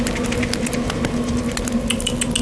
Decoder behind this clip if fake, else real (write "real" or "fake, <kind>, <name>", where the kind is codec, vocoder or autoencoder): real